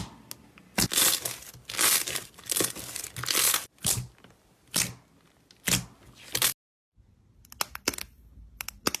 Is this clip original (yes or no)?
yes